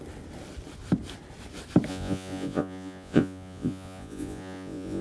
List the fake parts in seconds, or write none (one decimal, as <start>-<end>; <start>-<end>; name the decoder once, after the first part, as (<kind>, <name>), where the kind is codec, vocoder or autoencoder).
1.9-5.0 (vocoder, Vocos)